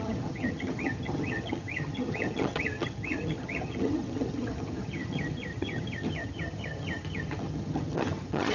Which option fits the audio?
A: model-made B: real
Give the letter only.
A